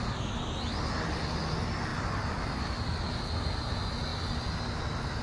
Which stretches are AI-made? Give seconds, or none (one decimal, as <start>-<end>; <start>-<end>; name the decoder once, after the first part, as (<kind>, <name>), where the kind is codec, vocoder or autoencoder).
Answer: none